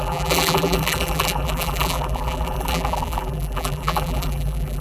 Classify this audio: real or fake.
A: fake